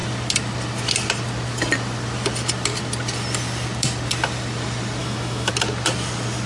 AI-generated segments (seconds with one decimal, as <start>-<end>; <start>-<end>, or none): 5.0-5.5